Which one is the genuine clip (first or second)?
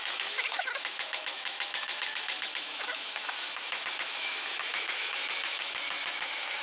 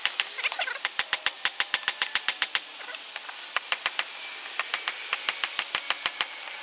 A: second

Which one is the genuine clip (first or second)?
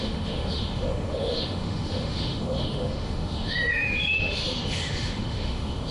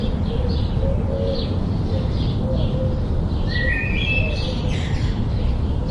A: second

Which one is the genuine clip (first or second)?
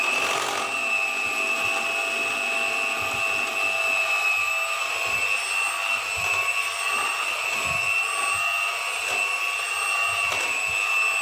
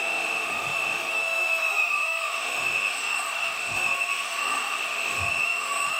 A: first